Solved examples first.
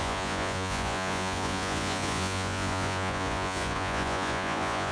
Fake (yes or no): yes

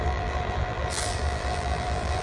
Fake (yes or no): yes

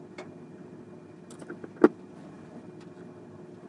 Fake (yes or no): no